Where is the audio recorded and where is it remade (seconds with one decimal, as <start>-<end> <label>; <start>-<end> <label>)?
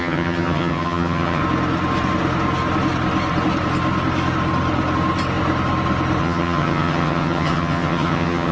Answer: 0.0-1.4 remade; 1.4-6.2 recorded; 6.2-8.5 remade